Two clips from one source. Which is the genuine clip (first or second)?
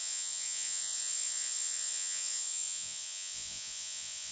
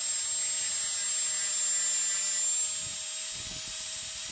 second